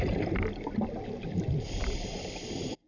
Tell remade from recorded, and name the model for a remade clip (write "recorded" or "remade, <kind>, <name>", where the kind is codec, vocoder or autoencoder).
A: recorded